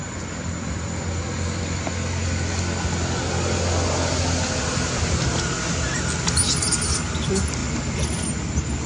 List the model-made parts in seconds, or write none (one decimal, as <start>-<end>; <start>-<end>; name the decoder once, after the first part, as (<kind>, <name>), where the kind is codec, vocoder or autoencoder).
none